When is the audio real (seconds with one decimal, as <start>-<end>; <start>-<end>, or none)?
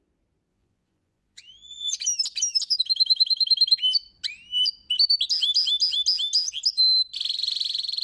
0.0-0.5; 2.0-8.0